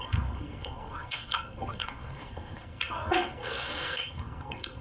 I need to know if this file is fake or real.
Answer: fake